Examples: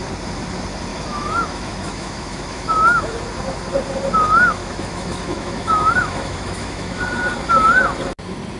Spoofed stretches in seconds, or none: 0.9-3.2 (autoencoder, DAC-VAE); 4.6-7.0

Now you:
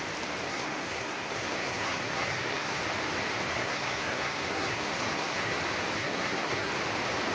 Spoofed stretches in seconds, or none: 0.5-2.8 (codec, SNAC); 3.5-5.6; 6.0-6.7

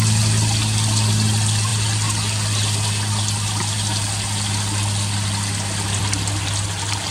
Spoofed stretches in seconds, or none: none

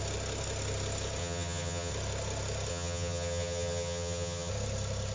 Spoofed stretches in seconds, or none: 1.2-1.9 (vocoder, HiFi-GAN); 2.7-4.5

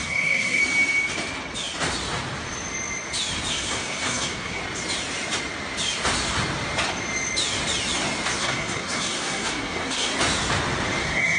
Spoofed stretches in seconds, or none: 0.0-0.6 (codec, SNAC); 3.5-4.6; 8.4-10.1; 11.0-11.4

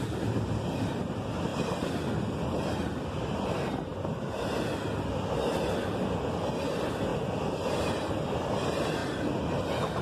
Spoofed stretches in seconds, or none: 7.1-8.1 (vocoder, BigVGAN v2)

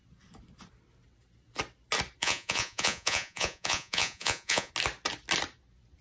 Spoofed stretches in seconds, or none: 2.2-4.7 (vocoder, Vocos)